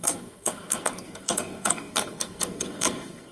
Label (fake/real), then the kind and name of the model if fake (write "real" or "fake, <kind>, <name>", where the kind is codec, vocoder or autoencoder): fake, codec, SNAC